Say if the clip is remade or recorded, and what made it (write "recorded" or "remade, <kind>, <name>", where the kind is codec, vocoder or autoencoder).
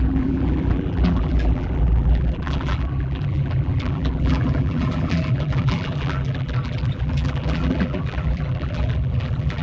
remade, vocoder, BigVGAN v2